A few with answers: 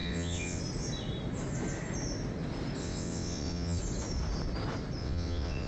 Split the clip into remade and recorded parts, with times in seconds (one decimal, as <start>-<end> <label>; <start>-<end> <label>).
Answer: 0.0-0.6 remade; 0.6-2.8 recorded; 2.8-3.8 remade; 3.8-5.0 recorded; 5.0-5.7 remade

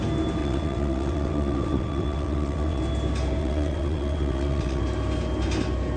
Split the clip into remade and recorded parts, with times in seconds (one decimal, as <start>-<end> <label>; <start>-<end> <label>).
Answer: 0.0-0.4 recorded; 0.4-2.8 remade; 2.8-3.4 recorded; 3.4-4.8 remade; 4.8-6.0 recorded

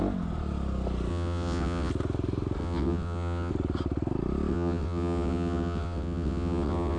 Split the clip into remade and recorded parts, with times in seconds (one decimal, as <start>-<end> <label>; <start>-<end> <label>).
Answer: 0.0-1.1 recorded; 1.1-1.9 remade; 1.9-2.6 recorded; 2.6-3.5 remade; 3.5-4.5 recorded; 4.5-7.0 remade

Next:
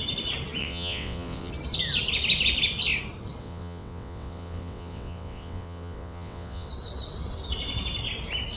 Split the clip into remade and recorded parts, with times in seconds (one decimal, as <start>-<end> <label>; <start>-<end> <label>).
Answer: 0.0-0.6 recorded; 0.6-1.5 remade; 1.5-3.4 recorded; 3.4-6.7 remade; 6.7-8.6 recorded